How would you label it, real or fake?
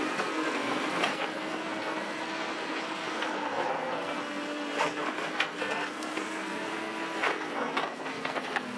fake